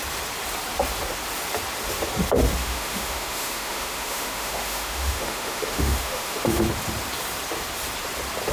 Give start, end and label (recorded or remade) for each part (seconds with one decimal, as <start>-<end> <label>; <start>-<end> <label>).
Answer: 0.0-2.6 recorded; 2.6-6.6 remade; 6.6-8.5 recorded